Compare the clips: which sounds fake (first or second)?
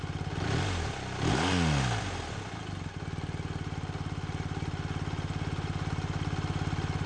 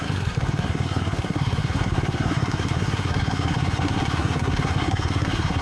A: second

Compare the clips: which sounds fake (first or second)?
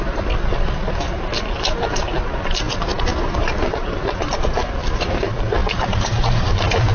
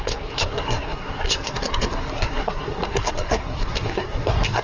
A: second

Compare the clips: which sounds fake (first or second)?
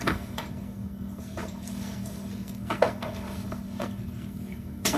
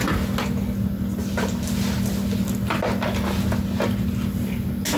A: first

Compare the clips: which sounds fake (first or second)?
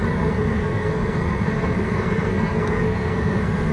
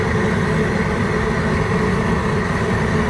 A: first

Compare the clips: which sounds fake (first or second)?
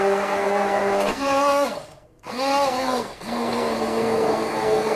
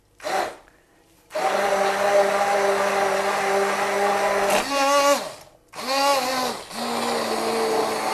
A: first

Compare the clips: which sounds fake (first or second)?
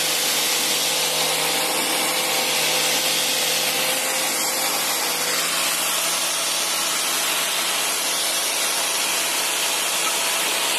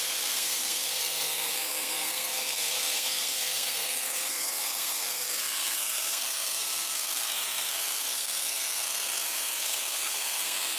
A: second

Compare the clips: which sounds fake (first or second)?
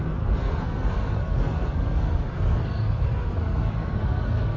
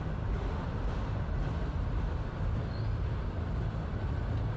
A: first